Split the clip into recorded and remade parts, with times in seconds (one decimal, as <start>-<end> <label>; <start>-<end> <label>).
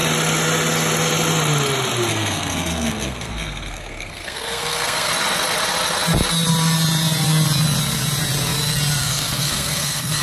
0.0-2.1 recorded; 2.1-5.1 remade; 5.1-9.0 recorded; 9.0-10.2 remade